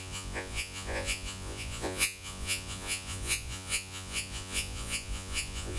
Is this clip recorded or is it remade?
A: remade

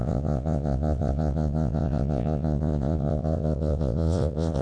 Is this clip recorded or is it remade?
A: remade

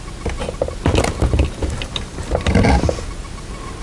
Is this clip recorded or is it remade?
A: recorded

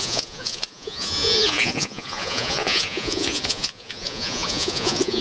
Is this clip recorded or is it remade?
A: remade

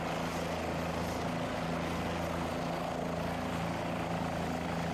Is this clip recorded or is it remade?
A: recorded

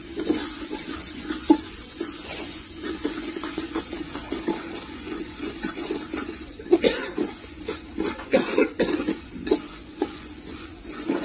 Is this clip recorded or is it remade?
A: remade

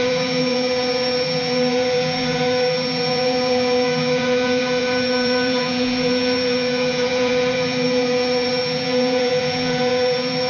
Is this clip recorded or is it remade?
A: remade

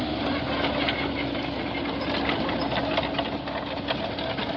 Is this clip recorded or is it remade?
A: recorded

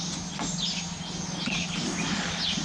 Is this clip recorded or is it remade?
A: recorded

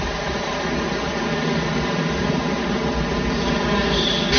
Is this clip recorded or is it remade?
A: recorded